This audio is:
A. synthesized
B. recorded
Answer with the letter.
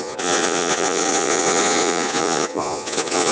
A